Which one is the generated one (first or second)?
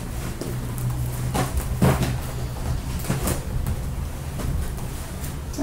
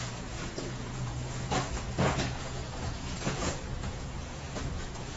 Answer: second